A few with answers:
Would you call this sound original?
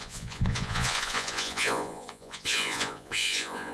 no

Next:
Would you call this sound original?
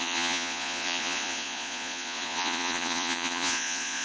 no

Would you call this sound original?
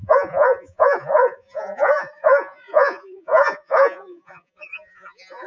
no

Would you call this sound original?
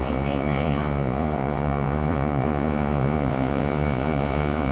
no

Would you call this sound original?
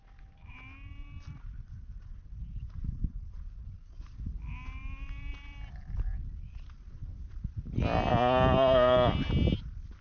yes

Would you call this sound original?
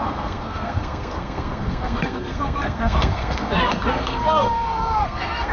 no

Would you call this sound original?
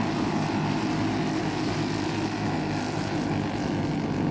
yes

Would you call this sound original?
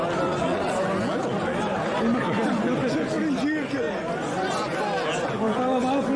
yes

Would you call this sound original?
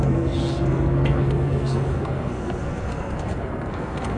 no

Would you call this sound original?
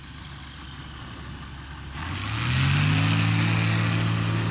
yes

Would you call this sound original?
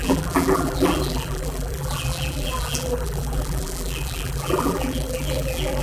no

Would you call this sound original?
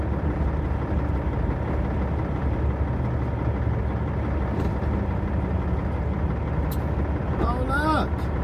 yes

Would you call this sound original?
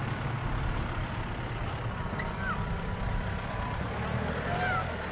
no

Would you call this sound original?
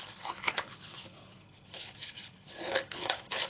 no